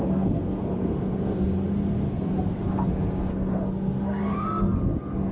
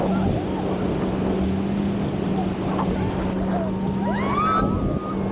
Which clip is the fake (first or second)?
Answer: first